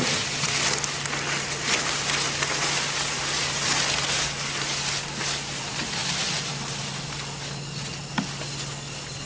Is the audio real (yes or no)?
yes